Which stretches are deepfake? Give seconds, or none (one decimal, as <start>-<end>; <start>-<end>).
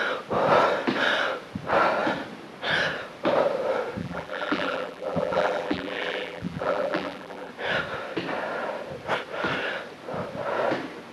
4.0-7.5